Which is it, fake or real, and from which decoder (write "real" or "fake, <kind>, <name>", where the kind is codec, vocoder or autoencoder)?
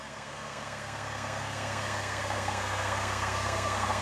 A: fake, codec, SNAC